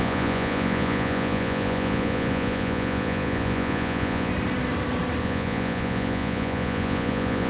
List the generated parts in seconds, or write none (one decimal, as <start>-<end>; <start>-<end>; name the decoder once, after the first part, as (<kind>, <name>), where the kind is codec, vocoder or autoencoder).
0.0-4.3 (vocoder, Vocos); 5.2-7.5